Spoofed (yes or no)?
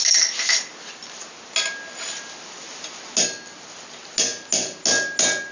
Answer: no